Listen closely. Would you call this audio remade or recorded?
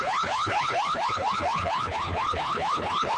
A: remade